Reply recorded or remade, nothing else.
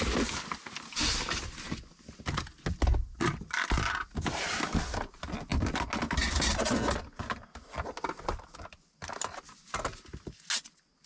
recorded